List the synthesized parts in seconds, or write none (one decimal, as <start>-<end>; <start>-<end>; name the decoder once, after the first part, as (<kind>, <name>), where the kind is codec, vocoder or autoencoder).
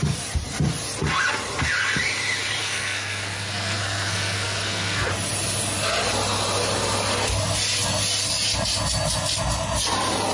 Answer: 2.6-5.1 (codec, SNAC)